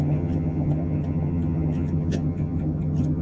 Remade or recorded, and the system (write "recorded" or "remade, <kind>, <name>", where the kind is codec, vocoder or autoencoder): remade, vocoder, HiFi-GAN